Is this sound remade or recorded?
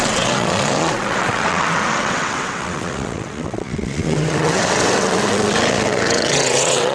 remade